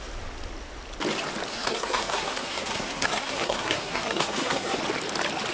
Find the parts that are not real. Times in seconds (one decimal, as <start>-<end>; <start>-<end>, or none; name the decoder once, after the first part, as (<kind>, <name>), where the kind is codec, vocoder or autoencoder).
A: 1.5-4.8 (codec, SNAC)